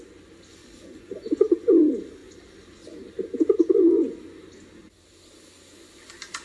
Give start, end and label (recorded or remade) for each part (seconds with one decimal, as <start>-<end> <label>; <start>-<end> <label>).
0.0-0.6 recorded; 0.6-1.8 remade; 1.8-6.4 recorded